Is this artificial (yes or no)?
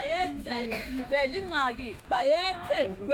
yes